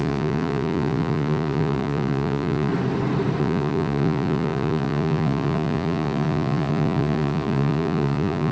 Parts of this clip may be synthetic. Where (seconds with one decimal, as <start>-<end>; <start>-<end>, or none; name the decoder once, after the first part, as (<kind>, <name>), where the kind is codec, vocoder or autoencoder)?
0.0-2.7 (vocoder, Vocos); 3.4-8.5